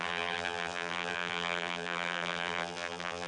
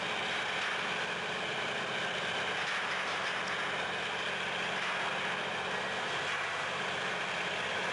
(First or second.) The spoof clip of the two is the first